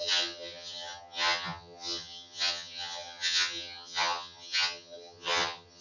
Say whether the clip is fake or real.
fake